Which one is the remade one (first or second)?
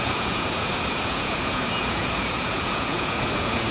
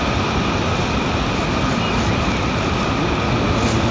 first